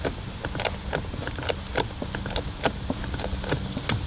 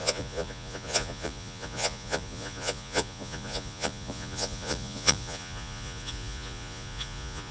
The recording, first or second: first